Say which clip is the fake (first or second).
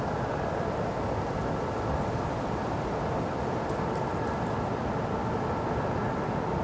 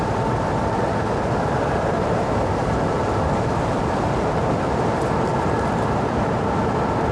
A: second